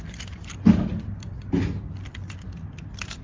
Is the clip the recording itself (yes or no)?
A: yes